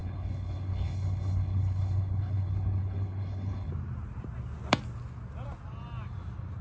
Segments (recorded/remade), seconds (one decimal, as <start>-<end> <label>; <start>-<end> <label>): 0.0-3.7 remade; 3.7-6.6 recorded